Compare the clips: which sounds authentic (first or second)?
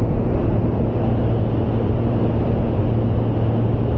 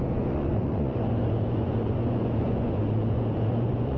first